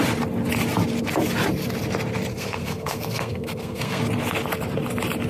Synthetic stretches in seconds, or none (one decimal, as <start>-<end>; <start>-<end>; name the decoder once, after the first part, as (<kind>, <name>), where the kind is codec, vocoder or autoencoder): 2.3-4.0 (codec, SNAC)